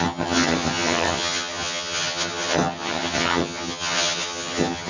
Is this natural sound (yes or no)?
no